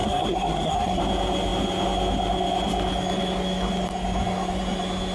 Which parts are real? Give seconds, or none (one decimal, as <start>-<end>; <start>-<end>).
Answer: 1.0-5.1